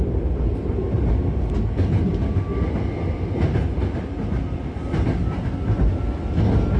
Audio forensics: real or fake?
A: real